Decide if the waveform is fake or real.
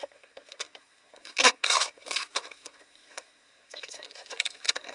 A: fake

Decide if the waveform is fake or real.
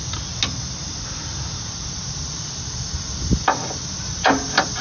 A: real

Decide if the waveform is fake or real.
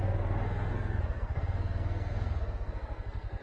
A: fake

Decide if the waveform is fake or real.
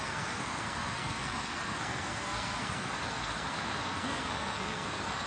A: fake